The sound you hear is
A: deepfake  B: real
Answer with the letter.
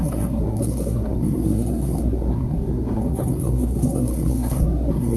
A